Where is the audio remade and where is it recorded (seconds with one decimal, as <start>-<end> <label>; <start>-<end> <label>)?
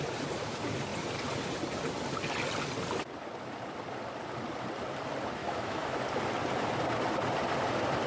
0.0-5.4 recorded; 5.4-6.0 remade; 6.0-8.1 recorded